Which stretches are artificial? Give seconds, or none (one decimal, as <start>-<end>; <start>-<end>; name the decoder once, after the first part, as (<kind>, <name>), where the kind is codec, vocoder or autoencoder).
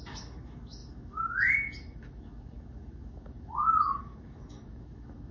0.0-5.3 (autoencoder, DAC-VAE)